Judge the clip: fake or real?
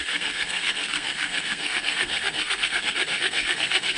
fake